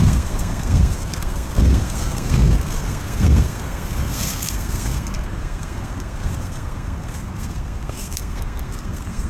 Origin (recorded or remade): remade